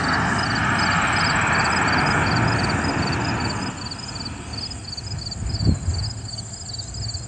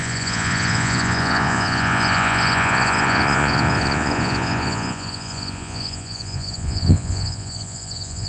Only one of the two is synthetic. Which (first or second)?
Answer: second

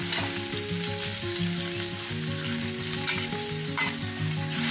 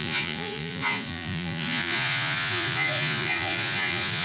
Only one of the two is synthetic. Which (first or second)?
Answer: second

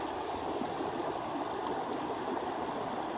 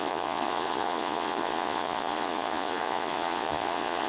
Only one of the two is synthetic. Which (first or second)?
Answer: second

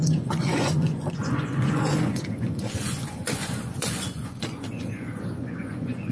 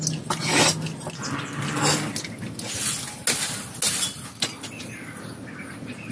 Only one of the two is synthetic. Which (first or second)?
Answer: first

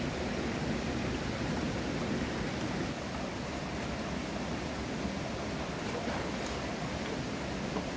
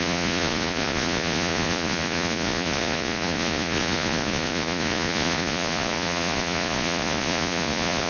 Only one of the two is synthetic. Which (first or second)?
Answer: second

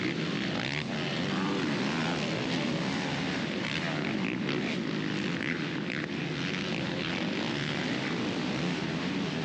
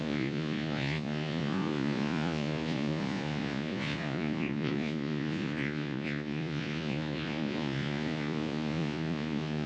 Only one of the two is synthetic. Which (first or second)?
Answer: second